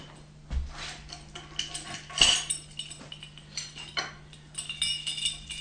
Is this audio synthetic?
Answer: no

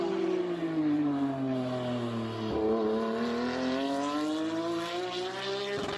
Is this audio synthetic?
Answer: no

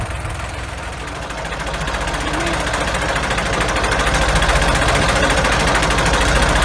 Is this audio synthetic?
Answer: no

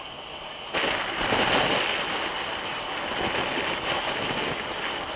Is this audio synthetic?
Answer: no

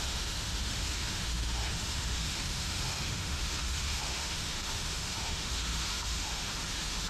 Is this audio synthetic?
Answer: yes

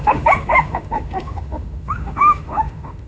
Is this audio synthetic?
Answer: yes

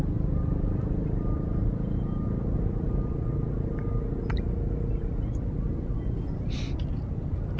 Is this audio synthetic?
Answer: no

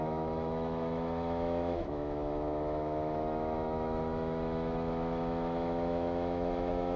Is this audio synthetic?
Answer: yes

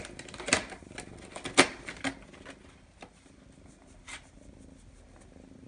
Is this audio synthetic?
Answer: no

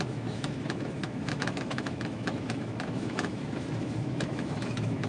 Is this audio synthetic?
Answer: yes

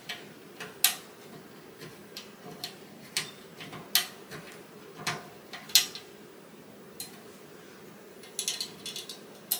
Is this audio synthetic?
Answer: no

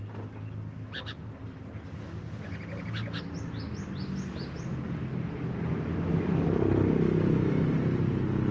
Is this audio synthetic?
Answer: no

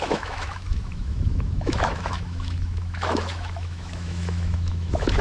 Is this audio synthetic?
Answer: yes